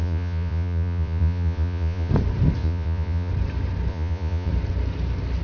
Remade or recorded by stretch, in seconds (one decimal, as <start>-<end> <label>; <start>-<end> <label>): 0.0-2.1 remade; 2.1-2.6 recorded; 2.6-3.3 remade; 3.3-3.9 recorded; 3.9-4.5 remade; 4.5-5.4 recorded